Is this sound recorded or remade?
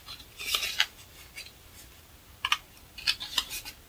recorded